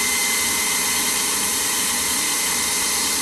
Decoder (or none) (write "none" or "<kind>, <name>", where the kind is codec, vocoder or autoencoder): vocoder, BigVGAN v2